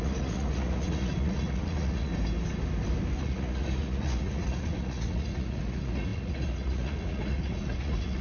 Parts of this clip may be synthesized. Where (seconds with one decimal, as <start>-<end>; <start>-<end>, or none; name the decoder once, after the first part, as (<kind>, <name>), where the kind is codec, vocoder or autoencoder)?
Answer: 0.0-2.1 (vocoder, Vocos); 3.2-8.2